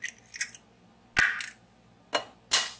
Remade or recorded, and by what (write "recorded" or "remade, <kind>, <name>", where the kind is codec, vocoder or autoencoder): recorded